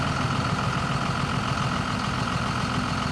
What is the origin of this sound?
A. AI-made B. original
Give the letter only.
B